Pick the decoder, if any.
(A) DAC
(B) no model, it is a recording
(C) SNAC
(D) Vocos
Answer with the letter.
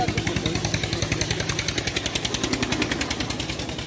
B